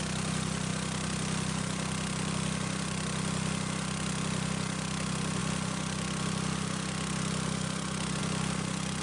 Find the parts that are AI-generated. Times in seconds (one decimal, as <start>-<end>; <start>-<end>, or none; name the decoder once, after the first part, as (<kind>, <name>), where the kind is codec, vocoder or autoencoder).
none